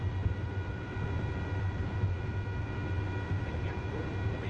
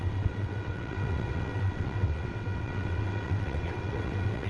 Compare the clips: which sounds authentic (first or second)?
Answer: first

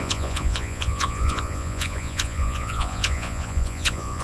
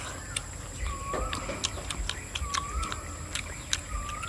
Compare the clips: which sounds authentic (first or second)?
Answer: second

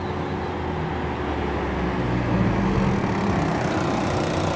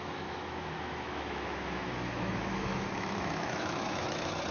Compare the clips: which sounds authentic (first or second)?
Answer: first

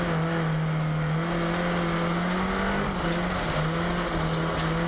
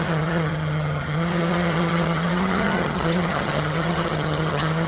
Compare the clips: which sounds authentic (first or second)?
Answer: first